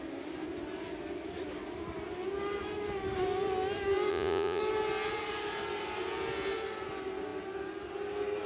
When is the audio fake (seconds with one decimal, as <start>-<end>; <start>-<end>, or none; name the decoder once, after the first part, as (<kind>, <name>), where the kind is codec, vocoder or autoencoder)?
4.1-4.6 (vocoder, Vocos)